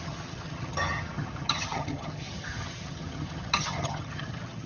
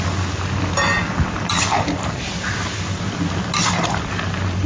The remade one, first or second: first